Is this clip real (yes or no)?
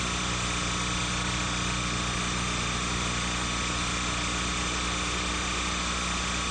yes